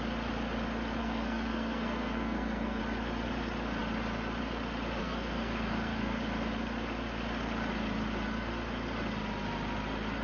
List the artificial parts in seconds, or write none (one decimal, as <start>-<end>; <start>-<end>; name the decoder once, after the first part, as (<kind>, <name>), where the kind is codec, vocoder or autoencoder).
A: 1.0-2.8 (codec, SNAC); 5.0-6.2